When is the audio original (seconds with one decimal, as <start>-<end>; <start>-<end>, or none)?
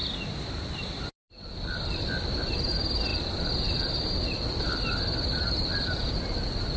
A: 2.7-3.1; 6.0-6.8